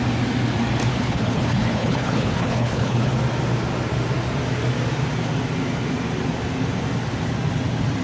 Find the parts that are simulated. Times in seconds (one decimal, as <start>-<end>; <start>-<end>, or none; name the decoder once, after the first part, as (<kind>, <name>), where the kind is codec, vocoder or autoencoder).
0.9-3.1 (codec, HILCodec)